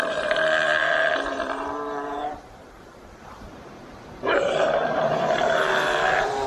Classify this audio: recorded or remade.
remade